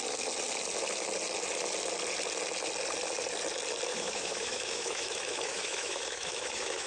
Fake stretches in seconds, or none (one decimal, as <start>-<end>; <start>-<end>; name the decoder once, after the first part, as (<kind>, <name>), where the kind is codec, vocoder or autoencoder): 3.9-6.9 (autoencoder, DAC-VAE)